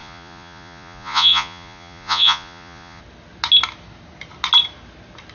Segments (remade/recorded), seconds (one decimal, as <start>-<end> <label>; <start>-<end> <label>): 0.0-3.0 remade; 3.0-5.3 recorded